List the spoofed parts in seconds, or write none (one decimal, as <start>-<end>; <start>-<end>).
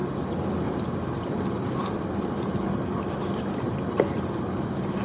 none